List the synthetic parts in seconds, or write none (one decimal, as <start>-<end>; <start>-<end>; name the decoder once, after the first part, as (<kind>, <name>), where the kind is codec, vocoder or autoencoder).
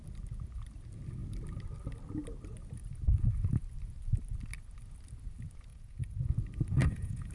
5.7-6.3 (vocoder, Vocos); 6.8-7.3